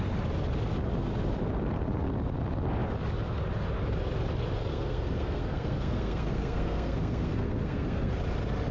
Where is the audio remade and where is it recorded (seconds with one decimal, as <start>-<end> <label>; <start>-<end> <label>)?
0.0-4.7 recorded; 4.7-8.1 remade; 8.1-8.7 recorded